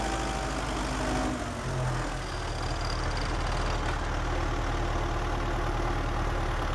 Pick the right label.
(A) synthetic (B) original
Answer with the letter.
B